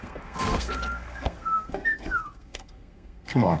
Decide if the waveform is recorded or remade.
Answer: remade